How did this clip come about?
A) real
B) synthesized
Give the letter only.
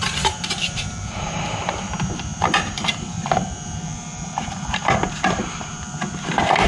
B